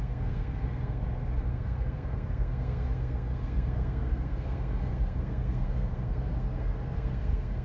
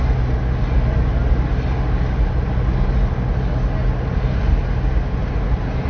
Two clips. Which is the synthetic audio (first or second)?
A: first